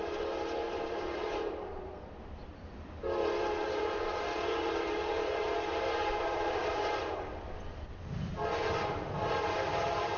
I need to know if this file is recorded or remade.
remade